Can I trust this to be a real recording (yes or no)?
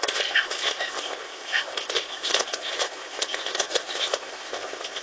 no